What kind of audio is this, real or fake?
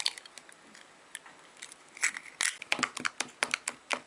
real